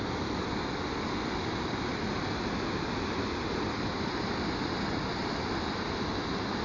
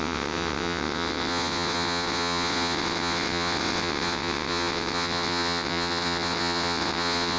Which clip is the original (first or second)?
first